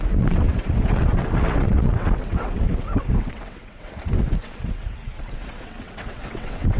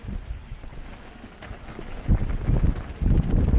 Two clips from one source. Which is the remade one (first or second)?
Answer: first